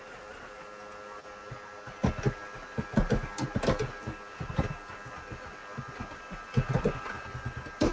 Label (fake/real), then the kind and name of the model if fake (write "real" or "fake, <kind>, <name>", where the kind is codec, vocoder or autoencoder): real